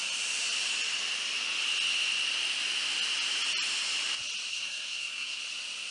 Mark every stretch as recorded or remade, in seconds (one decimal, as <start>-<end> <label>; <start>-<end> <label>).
0.0-4.5 recorded; 4.5-5.4 remade; 5.4-5.9 recorded